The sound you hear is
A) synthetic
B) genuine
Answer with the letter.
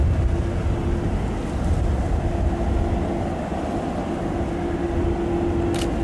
B